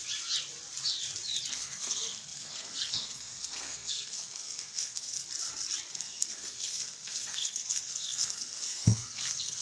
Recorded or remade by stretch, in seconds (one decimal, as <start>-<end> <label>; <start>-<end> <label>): 0.0-1.5 recorded; 1.5-5.2 remade; 5.2-5.9 recorded; 5.9-9.6 remade